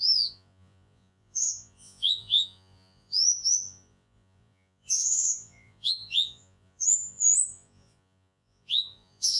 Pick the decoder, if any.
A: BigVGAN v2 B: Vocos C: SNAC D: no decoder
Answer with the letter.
B